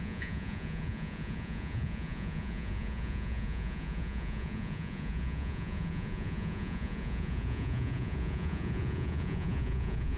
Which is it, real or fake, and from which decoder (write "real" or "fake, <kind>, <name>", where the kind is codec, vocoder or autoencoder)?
fake, vocoder, Vocos